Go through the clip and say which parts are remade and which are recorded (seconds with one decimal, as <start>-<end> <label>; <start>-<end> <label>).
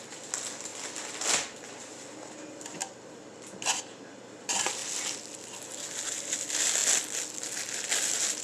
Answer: 0.0-8.4 recorded